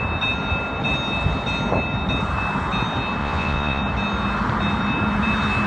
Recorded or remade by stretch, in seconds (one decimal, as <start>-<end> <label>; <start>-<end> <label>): 0.0-3.2 recorded; 3.2-3.8 remade; 3.8-5.7 recorded